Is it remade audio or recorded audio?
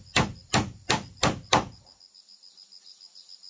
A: recorded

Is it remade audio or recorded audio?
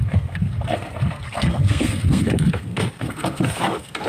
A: remade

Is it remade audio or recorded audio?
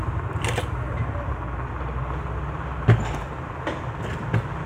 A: recorded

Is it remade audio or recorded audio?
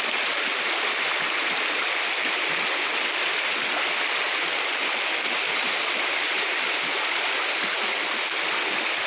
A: recorded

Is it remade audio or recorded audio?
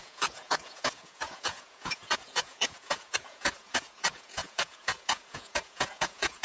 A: remade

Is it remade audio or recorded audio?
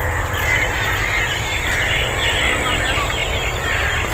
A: recorded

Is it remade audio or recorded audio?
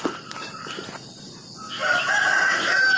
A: recorded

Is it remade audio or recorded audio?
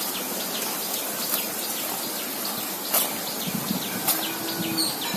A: recorded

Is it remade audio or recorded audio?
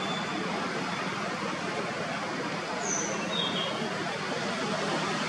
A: recorded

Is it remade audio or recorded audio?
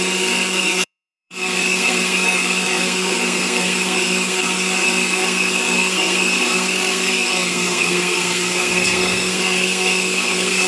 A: remade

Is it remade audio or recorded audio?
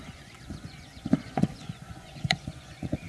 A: remade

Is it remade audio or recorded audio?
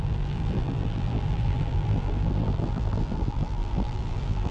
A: remade